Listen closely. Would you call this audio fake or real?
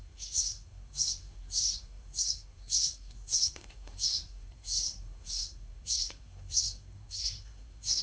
fake